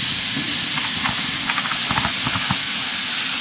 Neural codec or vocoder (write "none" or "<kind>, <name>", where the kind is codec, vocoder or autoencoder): none